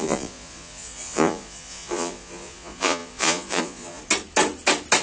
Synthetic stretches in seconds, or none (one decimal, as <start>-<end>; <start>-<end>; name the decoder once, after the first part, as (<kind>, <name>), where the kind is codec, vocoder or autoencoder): 0.0-4.0 (vocoder, Vocos)